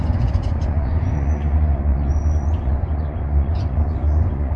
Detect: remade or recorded remade